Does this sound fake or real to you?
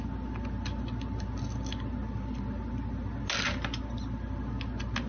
real